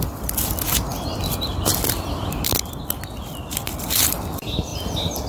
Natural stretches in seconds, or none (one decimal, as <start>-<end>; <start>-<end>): 0.0-5.3